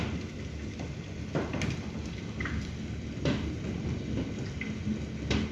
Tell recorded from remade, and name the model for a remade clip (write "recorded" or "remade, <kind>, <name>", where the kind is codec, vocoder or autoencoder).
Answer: recorded